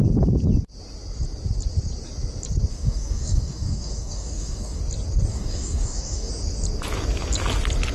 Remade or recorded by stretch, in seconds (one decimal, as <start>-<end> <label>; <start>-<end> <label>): 0.0-2.7 recorded; 2.7-4.8 remade; 4.8-5.3 recorded; 5.3-6.3 remade; 6.3-7.9 recorded